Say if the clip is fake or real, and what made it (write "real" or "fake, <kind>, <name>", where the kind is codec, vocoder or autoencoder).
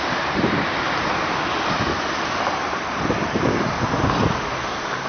real